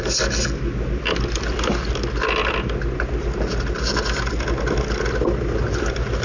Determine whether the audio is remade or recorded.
recorded